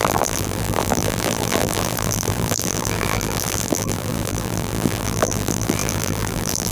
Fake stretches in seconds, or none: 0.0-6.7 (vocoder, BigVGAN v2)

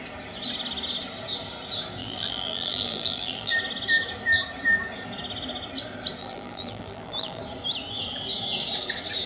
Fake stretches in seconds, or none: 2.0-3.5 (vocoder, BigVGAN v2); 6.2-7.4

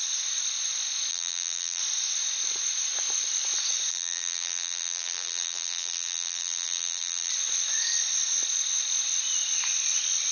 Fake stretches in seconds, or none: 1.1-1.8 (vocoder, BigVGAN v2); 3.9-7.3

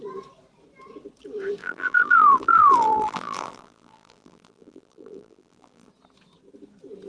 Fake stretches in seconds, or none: 1.6-5.9 (vocoder, BigVGAN v2)

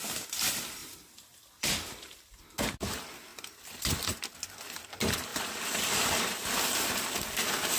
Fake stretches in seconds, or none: 0.8-2.4 (vocoder, BigVGAN v2); 3.3-4.0; 5.3-6.2

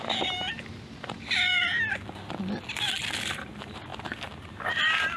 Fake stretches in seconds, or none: 0.0-1.7 (vocoder, BigVGAN v2); 3.2-5.2

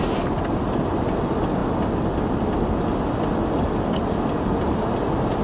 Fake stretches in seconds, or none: none